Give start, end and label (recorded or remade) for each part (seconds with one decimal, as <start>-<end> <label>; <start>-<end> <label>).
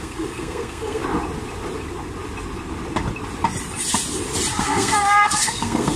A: 0.0-1.0 remade; 1.0-4.6 recorded; 4.6-6.0 remade